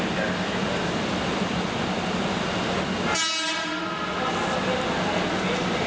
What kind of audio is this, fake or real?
real